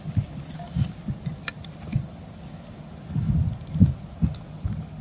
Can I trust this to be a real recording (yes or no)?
yes